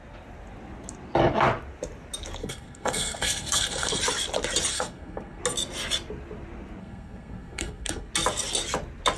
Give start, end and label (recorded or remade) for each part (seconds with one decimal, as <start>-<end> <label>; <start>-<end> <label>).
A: 0.0-2.4 recorded; 2.4-4.0 remade; 4.0-4.7 recorded; 4.7-5.4 remade; 5.4-6.8 recorded; 6.8-8.1 remade; 8.1-9.2 recorded